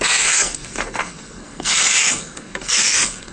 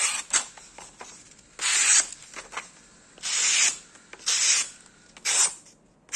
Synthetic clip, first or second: first